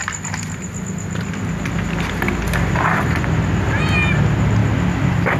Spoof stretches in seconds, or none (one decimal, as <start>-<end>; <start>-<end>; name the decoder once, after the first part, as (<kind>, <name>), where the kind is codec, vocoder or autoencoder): none